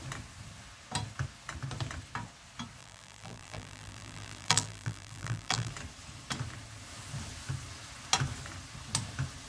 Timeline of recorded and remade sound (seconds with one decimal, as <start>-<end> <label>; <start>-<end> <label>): 0.0-2.8 recorded; 2.8-5.7 remade; 5.7-9.5 recorded